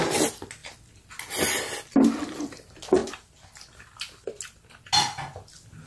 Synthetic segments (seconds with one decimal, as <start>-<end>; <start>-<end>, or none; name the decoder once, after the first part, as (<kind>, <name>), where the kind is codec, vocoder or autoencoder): none